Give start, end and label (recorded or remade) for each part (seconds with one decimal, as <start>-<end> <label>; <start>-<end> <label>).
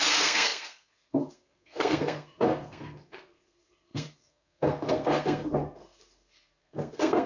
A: 0.0-7.3 remade